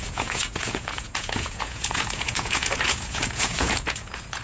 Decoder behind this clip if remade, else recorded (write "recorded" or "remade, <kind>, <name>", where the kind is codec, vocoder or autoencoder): remade, vocoder, Vocos